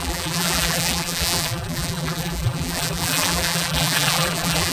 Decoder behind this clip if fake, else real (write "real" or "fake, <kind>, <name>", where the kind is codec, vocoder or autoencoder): fake, vocoder, BigVGAN v2